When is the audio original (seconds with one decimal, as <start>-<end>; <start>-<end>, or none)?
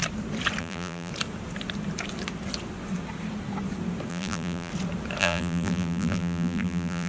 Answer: 0.0-0.6; 1.1-4.1; 4.7-5.2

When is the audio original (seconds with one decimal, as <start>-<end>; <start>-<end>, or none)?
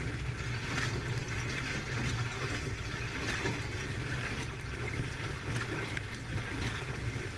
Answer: 0.0-7.4